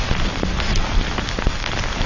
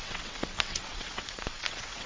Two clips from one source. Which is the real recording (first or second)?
first